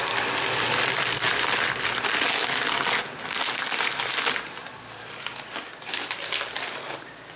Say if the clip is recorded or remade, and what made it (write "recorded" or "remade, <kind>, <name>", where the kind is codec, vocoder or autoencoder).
recorded